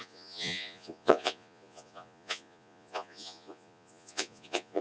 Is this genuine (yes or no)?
no